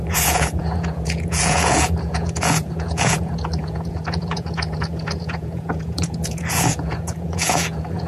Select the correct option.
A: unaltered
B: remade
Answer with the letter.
B